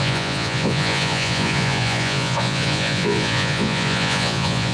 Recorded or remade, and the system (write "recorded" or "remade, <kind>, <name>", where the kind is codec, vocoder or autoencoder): remade, vocoder, Vocos